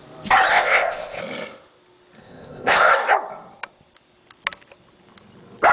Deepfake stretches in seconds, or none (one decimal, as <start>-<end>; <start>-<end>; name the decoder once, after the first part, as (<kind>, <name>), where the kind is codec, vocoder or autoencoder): 0.5-1.2 (codec, ZipCodec); 2.2-2.9